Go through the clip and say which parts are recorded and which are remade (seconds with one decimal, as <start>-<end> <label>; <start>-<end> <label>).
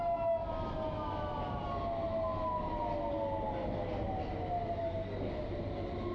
0.0-4.8 recorded; 4.8-5.3 remade; 5.3-6.1 recorded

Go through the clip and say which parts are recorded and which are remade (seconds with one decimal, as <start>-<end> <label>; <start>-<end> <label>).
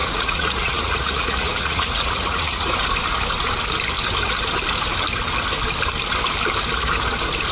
0.0-2.7 remade; 2.7-7.5 recorded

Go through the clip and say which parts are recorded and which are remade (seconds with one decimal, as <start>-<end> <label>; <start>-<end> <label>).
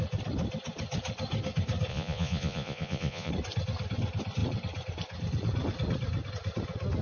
0.0-1.9 recorded; 1.9-3.3 remade; 3.3-7.0 recorded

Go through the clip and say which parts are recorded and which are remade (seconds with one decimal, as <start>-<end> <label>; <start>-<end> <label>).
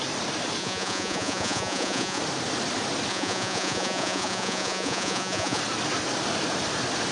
0.0-0.6 recorded; 0.6-2.2 remade; 2.2-3.1 recorded; 3.1-5.6 remade; 5.6-7.1 recorded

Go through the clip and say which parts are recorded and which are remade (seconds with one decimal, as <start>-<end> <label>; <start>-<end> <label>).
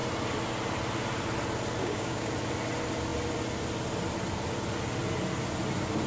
0.0-1.8 recorded; 1.8-2.3 remade; 2.3-6.1 recorded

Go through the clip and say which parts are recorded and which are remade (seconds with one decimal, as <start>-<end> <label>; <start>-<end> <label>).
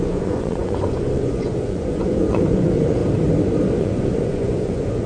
0.0-3.0 remade; 3.0-3.8 recorded; 3.8-5.1 remade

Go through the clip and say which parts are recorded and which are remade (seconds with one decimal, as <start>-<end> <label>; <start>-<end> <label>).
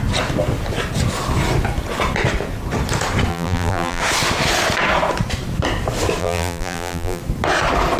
0.0-3.3 recorded; 3.3-4.0 remade; 4.0-6.2 recorded; 6.2-7.2 remade; 7.2-8.0 recorded